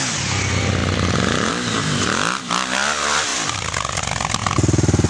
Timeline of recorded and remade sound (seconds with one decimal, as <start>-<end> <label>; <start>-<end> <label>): 0.0-5.1 recorded